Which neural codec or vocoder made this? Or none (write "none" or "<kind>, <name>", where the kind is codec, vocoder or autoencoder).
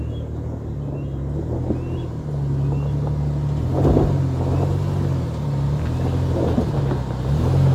none